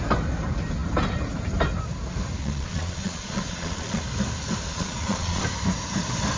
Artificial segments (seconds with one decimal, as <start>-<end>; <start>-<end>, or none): 2.4-4.0; 4.7-5.4